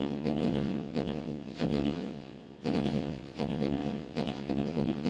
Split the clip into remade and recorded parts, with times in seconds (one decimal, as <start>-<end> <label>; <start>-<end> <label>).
0.0-5.1 remade